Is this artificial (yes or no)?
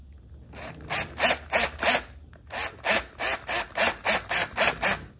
no